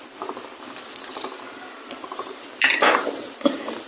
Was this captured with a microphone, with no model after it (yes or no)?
yes